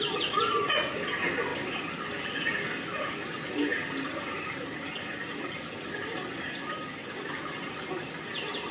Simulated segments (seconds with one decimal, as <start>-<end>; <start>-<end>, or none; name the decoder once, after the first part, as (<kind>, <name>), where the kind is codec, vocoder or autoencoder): none